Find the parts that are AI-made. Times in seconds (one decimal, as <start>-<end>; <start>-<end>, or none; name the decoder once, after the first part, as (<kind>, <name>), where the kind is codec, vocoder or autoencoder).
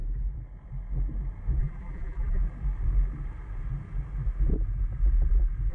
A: 1.6-2.4 (vocoder, BigVGAN v2)